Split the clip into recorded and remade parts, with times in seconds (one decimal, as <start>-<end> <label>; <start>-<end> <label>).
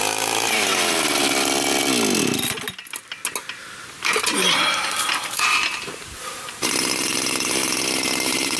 0.0-0.7 remade; 0.7-4.0 recorded; 4.0-8.6 remade